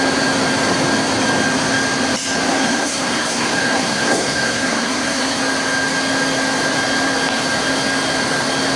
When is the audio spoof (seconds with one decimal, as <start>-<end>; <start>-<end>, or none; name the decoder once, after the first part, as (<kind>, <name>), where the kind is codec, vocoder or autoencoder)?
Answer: 2.5-5.4 (codec, SNAC)